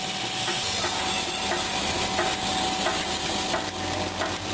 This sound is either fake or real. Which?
real